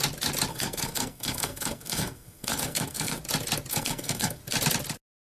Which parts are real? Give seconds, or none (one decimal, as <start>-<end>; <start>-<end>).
0.0-0.5; 3.2-3.7; 4.4-5.4